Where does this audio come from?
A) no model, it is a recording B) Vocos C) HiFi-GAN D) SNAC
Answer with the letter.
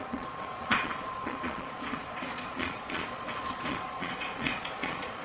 B